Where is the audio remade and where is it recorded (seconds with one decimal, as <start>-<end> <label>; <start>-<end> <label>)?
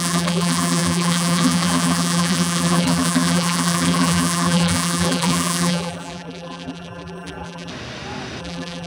0.0-7.7 remade; 7.7-8.4 recorded; 8.4-8.9 remade